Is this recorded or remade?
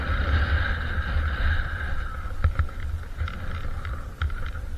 recorded